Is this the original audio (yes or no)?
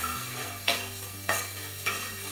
no